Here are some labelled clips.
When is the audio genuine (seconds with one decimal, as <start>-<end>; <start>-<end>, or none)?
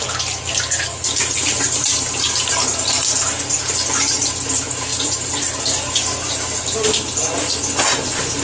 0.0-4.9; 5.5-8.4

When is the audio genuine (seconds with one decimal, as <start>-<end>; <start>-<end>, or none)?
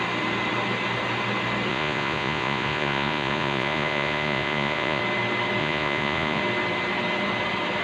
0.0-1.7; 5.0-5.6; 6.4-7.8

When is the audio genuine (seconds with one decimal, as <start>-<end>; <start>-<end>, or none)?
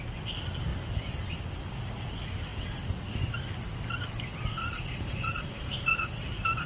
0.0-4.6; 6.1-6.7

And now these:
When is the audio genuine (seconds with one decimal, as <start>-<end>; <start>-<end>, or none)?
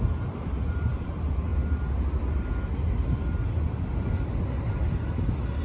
0.0-5.6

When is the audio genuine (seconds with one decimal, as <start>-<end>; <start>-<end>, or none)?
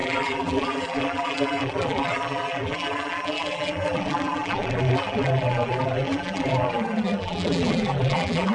none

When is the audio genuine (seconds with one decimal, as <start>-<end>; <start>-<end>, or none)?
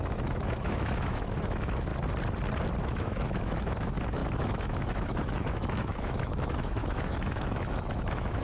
1.9-2.8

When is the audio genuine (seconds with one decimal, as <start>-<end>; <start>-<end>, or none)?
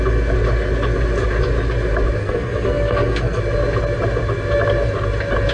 0.0-2.2; 3.4-5.5